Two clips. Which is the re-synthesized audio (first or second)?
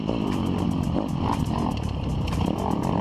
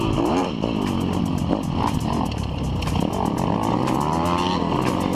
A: first